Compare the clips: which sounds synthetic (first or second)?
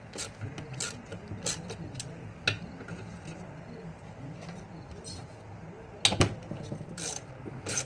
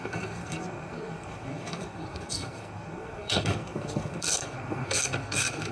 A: second